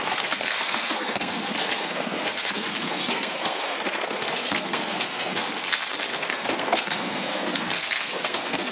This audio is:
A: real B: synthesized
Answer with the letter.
B